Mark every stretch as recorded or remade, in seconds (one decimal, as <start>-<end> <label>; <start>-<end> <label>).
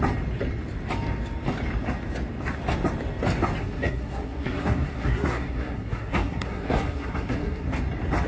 0.0-3.6 recorded; 3.6-7.7 remade; 7.7-8.3 recorded